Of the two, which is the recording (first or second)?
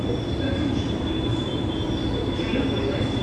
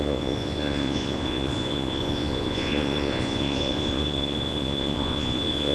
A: first